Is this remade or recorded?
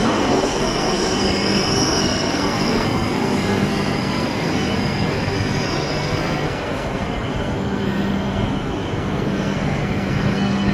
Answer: remade